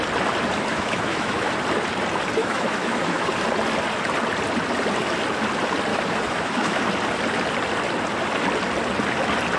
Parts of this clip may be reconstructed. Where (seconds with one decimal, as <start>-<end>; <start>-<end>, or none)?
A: 0.7-1.5; 2.4-3.3; 5.9-6.8